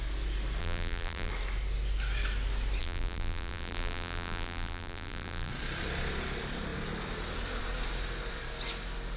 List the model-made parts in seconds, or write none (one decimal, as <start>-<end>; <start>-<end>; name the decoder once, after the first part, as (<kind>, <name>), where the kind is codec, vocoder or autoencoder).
0.6-1.3 (vocoder, BigVGAN v2); 2.8-5.5